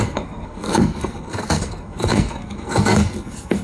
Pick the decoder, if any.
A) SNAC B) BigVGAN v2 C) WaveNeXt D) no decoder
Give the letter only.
A